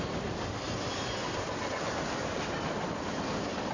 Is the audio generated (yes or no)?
no